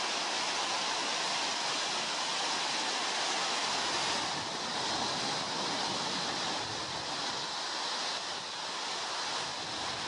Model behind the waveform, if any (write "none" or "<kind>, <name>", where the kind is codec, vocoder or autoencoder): none